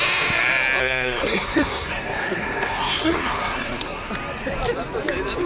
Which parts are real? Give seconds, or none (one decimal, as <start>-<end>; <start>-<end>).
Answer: 0.0-0.8; 4.1-5.5